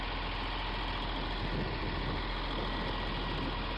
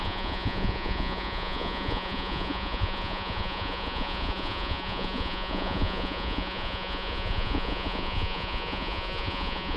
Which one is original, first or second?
first